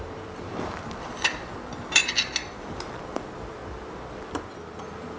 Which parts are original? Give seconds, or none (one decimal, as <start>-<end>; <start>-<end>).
2.0-2.6; 3.6-4.1; 4.5-5.2